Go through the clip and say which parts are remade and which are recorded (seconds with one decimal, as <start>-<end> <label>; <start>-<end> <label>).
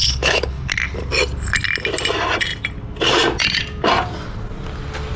0.0-0.7 remade; 0.7-5.2 recorded